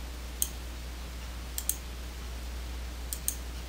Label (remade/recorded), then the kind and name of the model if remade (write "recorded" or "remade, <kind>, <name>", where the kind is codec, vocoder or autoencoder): recorded